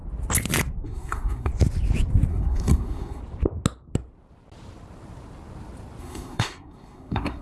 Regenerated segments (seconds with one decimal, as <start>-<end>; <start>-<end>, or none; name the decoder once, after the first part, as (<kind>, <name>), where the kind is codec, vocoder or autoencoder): 0.8-1.5 (codec, SNAC); 2.3-3.2; 6.0-7.4